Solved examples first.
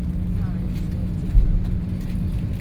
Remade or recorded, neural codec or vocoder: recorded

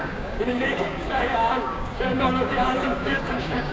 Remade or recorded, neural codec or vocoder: remade, codec, DAC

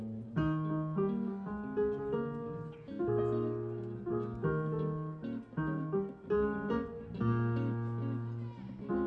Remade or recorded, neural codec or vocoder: recorded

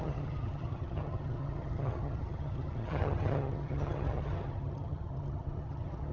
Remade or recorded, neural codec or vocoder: remade, vocoder, HiFi-GAN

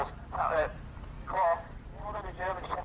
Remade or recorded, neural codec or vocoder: remade, vocoder, BigVGAN v2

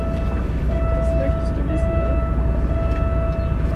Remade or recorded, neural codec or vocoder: recorded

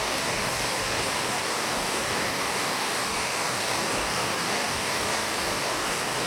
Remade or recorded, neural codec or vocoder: remade, codec, DAC